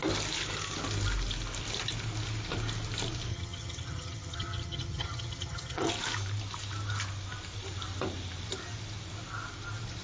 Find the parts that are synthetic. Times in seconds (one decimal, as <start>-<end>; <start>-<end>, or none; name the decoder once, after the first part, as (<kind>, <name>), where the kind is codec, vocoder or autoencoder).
3.3-5.9 (vocoder, HiFi-GAN)